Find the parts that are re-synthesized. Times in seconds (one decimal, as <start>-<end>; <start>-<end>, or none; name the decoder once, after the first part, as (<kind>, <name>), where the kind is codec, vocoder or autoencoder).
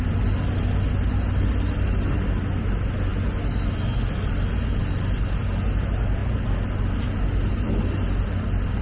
none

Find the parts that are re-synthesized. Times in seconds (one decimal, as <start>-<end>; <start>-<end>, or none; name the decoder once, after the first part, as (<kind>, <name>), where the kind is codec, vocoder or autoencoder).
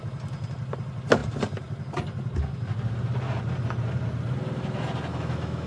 5.1-5.7 (autoencoder, DAC-VAE)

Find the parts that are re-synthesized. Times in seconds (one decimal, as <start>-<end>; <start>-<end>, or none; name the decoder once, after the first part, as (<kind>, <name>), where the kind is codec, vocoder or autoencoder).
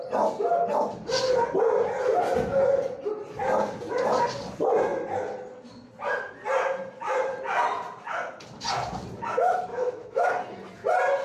9.7-10.3 (autoencoder, DAC-VAE)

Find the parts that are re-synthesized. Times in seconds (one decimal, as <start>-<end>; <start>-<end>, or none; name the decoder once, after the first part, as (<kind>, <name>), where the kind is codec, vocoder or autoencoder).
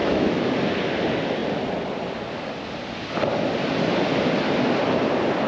0.0-0.6 (autoencoder, DAC-VAE)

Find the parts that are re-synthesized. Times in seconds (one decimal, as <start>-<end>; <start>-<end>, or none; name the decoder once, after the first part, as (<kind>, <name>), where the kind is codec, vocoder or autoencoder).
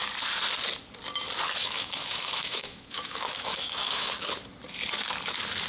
1.6-4.1 (autoencoder, DAC-VAE)